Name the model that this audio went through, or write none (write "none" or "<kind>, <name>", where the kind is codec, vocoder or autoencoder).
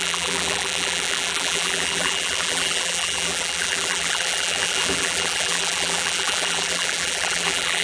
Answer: vocoder, BigVGAN v2